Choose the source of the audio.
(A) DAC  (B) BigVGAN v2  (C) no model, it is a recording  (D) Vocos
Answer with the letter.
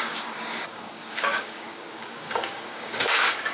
A